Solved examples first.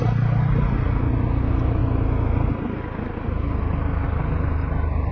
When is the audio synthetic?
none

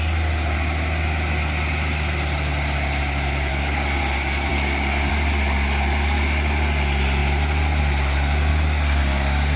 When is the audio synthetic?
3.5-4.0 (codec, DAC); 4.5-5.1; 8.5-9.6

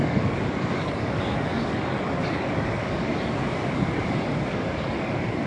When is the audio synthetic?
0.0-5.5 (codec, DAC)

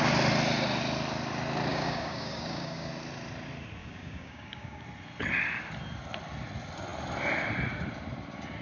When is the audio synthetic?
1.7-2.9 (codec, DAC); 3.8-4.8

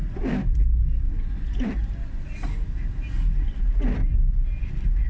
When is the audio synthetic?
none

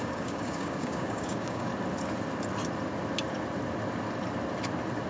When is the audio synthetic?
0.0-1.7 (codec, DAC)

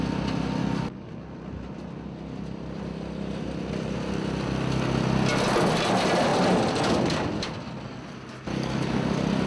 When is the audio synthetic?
0.6-1.1 (codec, DAC); 8.5-9.1